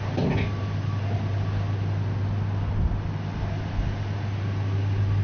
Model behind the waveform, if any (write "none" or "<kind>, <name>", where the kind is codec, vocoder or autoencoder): none